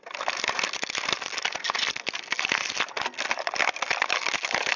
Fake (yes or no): no